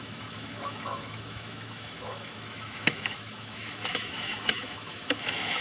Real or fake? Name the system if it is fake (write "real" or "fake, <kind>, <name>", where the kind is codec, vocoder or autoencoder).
fake, autoencoder, DAC-VAE